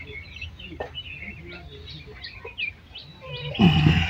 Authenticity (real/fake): real